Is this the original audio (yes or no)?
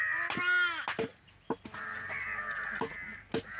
yes